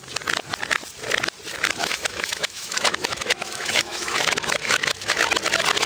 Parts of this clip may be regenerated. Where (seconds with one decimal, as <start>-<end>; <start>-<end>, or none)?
1.8-5.3